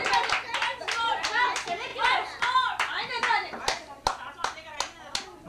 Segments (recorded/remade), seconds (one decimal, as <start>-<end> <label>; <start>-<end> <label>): 0.0-5.5 recorded